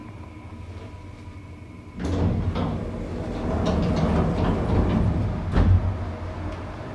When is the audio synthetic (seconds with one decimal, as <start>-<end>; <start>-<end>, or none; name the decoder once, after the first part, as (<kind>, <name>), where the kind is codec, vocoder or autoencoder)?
none